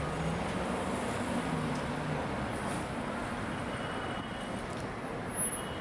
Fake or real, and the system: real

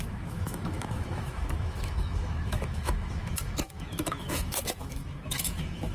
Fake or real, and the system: fake, autoencoder, DAC-VAE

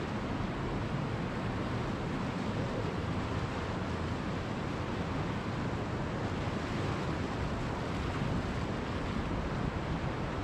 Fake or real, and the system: real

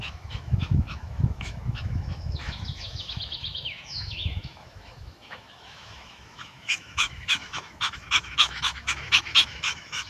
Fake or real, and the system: fake, autoencoder, DAC-VAE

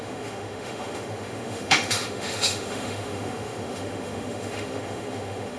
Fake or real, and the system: fake, autoencoder, DAC-VAE